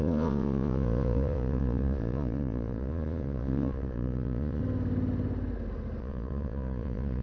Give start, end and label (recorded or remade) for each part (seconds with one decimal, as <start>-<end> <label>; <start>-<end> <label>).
0.0-4.6 remade; 4.6-6.0 recorded; 6.0-7.2 remade